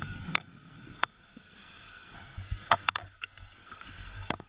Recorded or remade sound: remade